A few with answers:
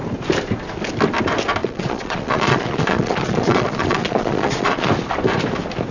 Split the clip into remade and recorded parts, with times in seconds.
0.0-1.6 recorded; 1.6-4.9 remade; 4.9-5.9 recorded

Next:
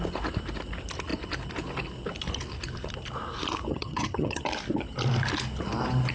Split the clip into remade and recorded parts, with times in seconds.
0.0-3.7 recorded; 3.7-4.4 remade; 4.4-6.1 recorded

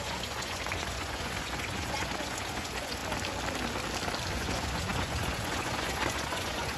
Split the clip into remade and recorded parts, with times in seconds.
0.0-3.0 remade; 3.0-4.3 recorded; 4.3-6.8 remade

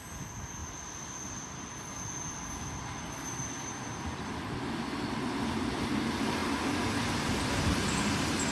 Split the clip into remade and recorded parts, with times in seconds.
0.0-3.7 recorded; 3.7-4.6 remade; 4.6-8.5 recorded

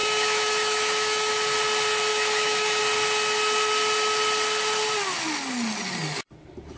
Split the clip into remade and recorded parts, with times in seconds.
0.0-1.3 remade; 1.3-2.1 recorded; 2.1-2.8 remade; 2.8-6.8 recorded

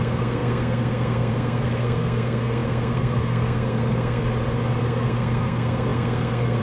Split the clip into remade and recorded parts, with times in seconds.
0.0-4.2 remade; 4.2-4.8 recorded; 4.8-6.6 remade

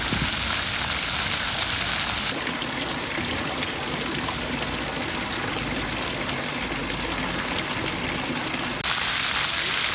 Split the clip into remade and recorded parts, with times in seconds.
0.0-9.9 recorded

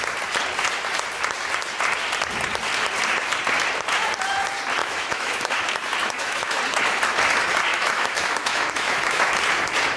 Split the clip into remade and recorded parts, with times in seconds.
0.0-4.8 recorded; 4.8-5.5 remade; 5.5-6.0 recorded; 6.0-6.6 remade; 6.6-7.7 recorded; 7.7-9.4 remade; 9.4-10.0 recorded